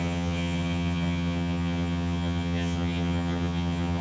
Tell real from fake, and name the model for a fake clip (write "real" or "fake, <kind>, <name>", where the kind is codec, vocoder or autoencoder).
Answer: fake, vocoder, HiFi-GAN